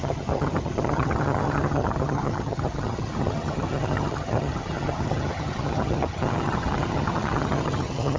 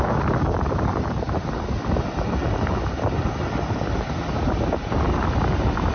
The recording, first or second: second